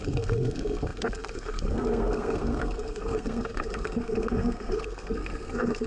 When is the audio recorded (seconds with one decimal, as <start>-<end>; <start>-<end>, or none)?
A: none